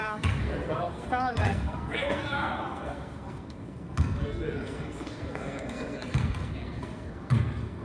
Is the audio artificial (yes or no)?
yes